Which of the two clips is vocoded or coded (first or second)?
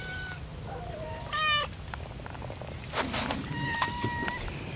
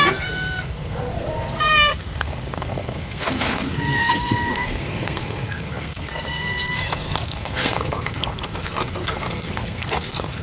second